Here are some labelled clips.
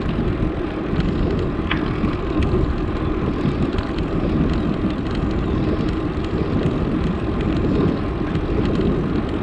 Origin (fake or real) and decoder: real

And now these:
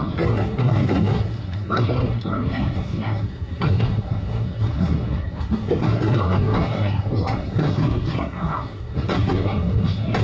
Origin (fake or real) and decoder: fake, codec, SNAC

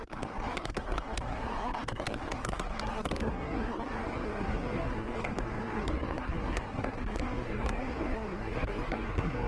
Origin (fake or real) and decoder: fake, codec, SNAC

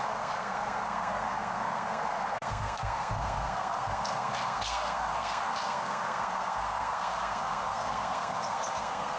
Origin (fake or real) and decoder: fake, codec, SNAC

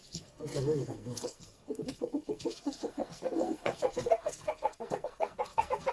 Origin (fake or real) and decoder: fake, codec, SNAC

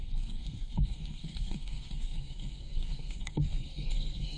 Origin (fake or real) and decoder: fake, codec, SNAC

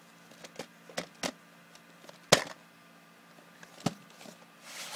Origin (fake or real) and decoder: real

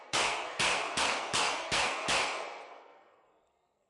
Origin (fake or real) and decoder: fake, codec, SNAC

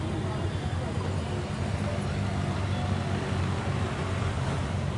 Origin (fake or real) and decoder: real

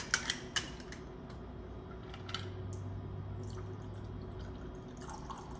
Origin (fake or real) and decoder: real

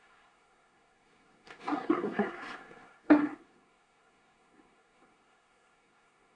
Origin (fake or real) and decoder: fake, codec, SNAC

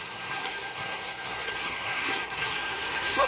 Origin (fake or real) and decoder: fake, codec, SNAC